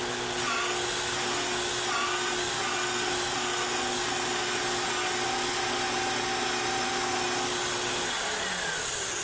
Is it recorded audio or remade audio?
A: recorded